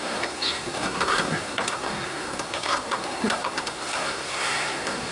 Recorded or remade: remade